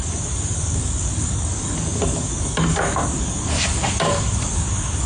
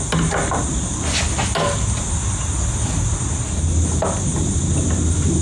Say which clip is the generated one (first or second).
first